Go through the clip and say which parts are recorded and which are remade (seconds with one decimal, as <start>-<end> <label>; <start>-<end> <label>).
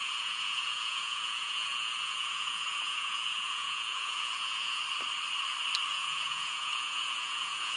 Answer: 0.0-4.8 remade; 4.8-5.9 recorded; 5.9-7.8 remade